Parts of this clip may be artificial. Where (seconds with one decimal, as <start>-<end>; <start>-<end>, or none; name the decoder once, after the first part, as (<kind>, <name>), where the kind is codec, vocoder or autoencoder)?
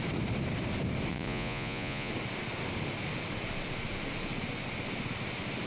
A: 1.1-2.1 (vocoder, Vocos)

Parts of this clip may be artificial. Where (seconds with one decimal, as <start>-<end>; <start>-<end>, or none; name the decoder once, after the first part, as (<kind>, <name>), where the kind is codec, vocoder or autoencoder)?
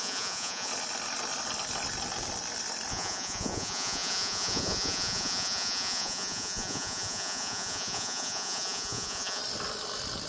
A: 0.0-0.7 (vocoder, Vocos); 2.9-9.4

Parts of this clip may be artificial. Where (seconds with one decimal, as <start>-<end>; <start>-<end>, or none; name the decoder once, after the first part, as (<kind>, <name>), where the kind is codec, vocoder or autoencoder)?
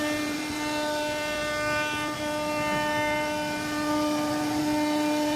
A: none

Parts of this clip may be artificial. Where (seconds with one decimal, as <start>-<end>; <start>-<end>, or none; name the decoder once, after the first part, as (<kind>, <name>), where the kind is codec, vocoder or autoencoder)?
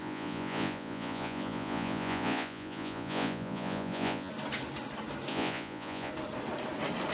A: 0.0-4.3 (vocoder, Vocos); 5.3-6.1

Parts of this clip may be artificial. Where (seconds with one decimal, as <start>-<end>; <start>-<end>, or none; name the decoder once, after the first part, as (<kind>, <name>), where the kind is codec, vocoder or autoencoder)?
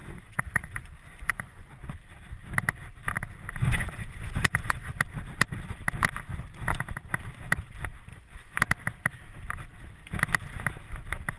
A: 0.0-1.7 (vocoder, Vocos); 3.6-5.0; 8.1-8.6